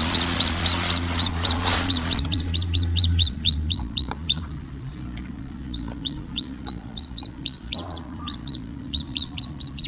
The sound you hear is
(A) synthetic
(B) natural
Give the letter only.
A